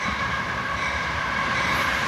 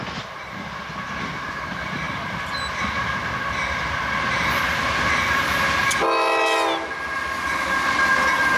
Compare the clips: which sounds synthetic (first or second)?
first